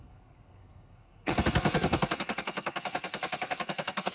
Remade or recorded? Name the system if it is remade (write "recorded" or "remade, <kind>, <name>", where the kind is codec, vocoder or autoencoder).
remade, codec, SNAC